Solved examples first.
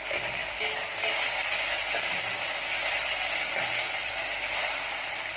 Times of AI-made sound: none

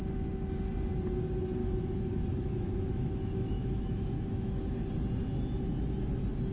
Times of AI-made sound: 1.6-4.9

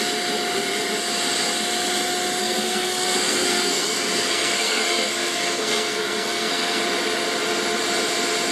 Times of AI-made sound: 2.4-6.8

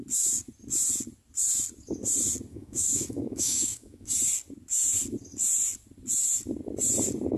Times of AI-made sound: 2.5-4.1